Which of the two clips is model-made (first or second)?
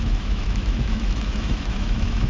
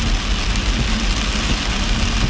first